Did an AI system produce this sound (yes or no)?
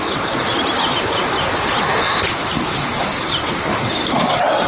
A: no